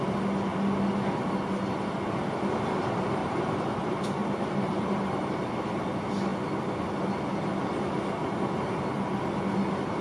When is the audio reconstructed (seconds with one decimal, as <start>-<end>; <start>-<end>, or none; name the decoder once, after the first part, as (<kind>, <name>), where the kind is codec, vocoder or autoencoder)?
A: 3.2-3.8 (vocoder, BigVGAN v2); 4.2-5.4